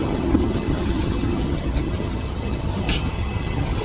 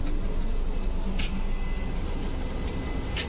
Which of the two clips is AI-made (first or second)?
first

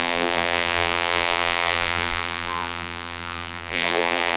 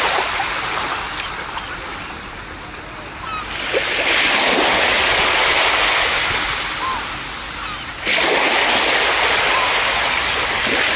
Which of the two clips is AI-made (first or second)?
first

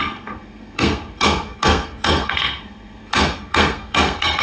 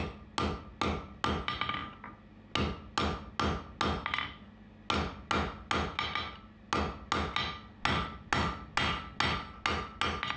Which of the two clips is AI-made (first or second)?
first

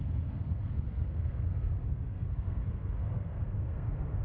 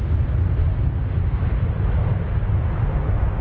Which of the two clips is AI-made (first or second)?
first